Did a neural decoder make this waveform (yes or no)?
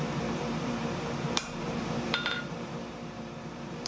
yes